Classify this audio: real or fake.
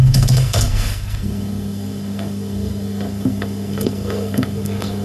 fake